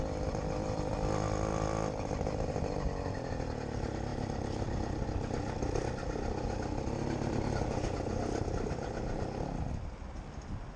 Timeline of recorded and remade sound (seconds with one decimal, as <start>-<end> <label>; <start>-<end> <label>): 0.0-1.5 recorded; 1.5-3.3 remade; 3.3-10.8 recorded